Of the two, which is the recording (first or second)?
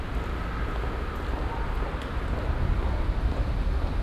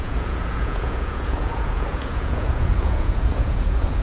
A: first